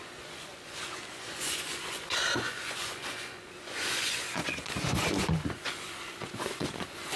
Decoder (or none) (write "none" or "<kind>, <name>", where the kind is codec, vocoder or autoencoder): vocoder, Vocos